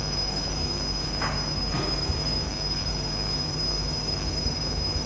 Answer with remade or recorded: remade